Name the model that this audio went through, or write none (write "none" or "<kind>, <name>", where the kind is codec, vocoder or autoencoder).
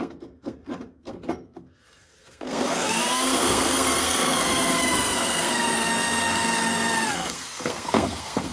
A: codec, SNAC